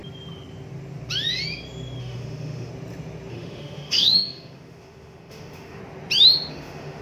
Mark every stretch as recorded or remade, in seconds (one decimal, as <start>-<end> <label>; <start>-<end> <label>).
0.0-2.0 recorded; 2.0-2.7 remade; 2.7-3.3 recorded; 3.3-5.8 remade; 5.8-6.5 recorded; 6.5-7.0 remade

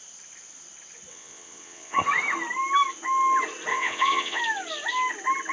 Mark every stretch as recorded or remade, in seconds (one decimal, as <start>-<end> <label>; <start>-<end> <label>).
0.0-1.1 recorded; 1.1-2.0 remade; 2.0-3.7 recorded; 3.7-4.4 remade; 4.4-5.5 recorded

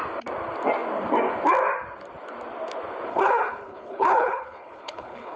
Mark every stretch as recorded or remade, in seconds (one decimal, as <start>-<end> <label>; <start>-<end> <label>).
0.0-3.1 recorded; 3.1-5.4 remade

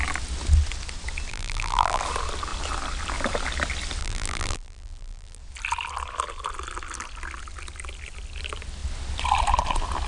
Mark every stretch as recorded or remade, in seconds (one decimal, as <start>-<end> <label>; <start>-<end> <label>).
0.0-1.3 recorded; 1.3-2.0 remade; 2.0-4.0 recorded; 4.0-5.4 remade; 5.4-10.1 recorded

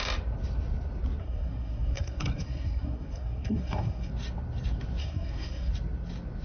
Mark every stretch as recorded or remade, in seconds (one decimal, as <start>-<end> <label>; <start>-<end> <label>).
0.0-1.2 recorded; 1.2-4.1 remade; 4.1-5.0 recorded; 5.0-5.7 remade; 5.7-6.4 recorded